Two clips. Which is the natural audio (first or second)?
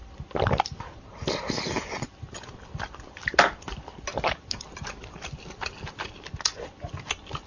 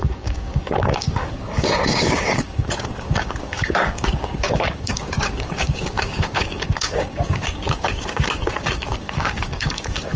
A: first